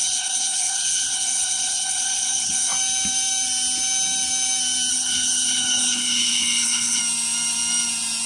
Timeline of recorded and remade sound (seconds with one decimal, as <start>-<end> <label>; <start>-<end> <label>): 0.0-2.7 remade; 2.7-4.9 recorded; 4.9-7.0 remade; 7.0-8.3 recorded